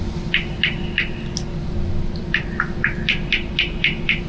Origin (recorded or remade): recorded